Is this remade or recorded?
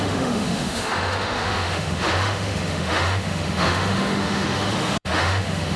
remade